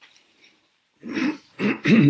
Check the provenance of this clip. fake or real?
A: fake